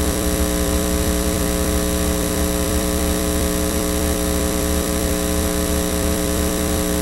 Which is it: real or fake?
fake